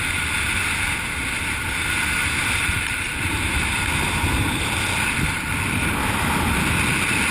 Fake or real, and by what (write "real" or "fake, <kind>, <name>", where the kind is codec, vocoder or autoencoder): real